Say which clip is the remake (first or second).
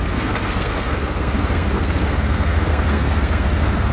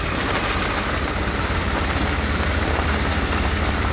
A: first